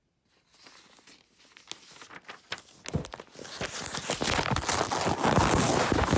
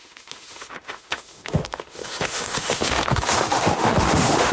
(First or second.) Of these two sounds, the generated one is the second